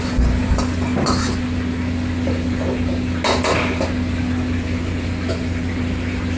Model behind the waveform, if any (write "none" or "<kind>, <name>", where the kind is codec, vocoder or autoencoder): none